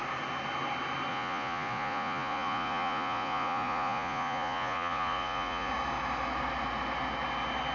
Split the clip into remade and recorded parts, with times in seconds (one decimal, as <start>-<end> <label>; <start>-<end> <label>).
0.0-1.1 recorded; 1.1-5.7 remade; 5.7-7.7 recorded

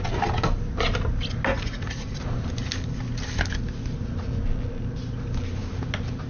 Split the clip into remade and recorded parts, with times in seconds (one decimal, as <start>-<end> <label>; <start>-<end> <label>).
0.0-1.5 recorded; 1.5-2.2 remade; 2.2-6.3 recorded

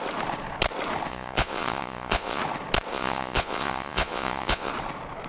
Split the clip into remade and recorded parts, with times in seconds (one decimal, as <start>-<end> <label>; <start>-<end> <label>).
0.0-1.1 recorded; 1.1-2.4 remade; 2.4-2.9 recorded; 2.9-4.7 remade; 4.7-5.3 recorded

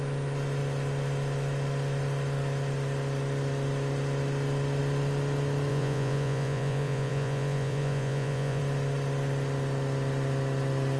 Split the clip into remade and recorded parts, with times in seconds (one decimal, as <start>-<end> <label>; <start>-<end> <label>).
0.0-5.7 recorded; 5.7-8.6 remade; 8.6-11.0 recorded

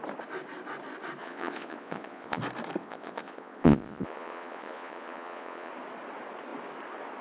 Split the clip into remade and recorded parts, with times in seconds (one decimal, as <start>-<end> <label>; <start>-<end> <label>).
0.0-1.2 recorded; 1.2-2.4 remade; 2.4-2.8 recorded; 2.8-5.7 remade; 5.7-7.2 recorded

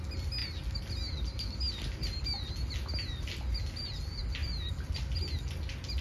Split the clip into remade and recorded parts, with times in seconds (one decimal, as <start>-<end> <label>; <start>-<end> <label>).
0.0-6.0 recorded

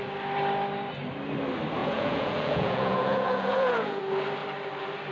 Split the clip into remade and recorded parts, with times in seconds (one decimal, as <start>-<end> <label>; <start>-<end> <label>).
0.0-1.8 recorded; 1.8-4.0 remade; 4.0-5.1 recorded